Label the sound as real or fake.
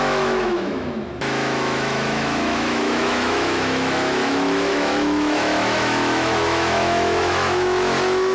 fake